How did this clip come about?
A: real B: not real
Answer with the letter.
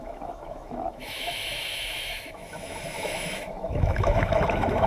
B